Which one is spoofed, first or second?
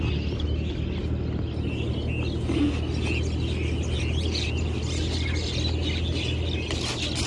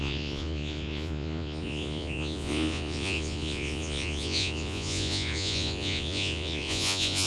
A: second